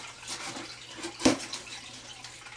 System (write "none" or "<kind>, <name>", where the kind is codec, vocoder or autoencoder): none